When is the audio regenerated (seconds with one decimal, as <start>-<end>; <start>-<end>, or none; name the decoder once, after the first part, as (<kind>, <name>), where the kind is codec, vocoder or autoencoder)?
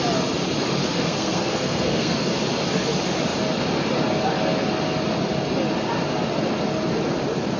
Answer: 0.8-2.3 (codec, SNAC)